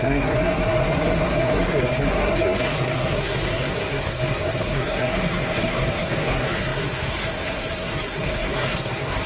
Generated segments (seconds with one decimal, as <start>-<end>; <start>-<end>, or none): 0.0-9.3